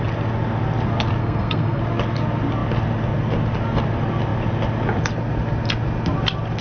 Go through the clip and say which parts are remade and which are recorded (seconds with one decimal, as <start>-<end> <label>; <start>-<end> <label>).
0.0-1.2 recorded; 1.2-1.8 remade; 1.8-6.6 recorded